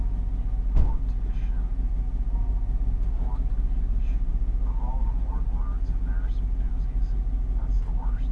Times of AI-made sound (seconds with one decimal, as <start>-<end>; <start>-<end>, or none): none